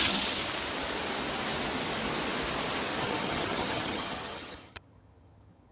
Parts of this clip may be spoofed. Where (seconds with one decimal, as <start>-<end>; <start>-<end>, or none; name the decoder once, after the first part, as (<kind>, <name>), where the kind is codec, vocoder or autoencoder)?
0.0-0.4 (vocoder, HiFi-GAN); 3.0-5.7